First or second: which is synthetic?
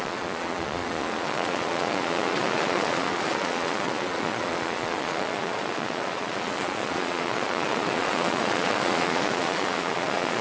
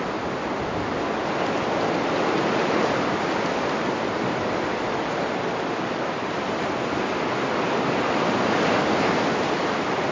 first